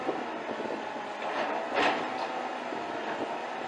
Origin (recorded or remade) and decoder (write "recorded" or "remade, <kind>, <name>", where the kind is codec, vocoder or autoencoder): recorded